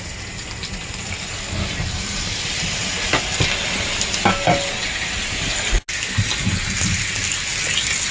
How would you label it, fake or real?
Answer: real